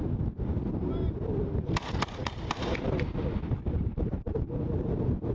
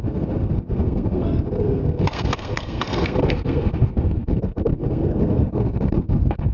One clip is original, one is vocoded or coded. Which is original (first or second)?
first